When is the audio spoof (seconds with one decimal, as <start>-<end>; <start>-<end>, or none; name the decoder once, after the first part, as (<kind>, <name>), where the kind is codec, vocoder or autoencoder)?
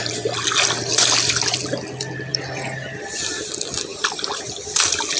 2.3-3.5 (vocoder, BigVGAN v2); 3.9-4.4